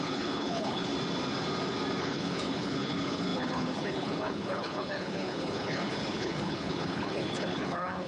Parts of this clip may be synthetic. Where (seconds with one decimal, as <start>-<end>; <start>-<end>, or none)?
0.0-0.9; 2.0-8.1